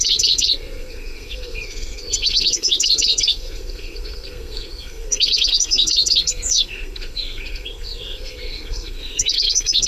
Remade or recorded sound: remade